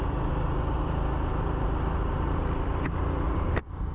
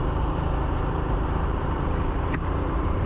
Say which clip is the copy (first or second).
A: second